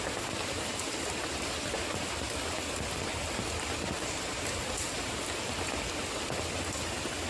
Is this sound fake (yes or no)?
no